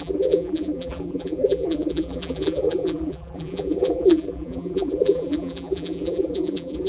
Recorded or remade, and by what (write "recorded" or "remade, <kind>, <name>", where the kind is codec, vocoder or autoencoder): remade, vocoder, BigVGAN v2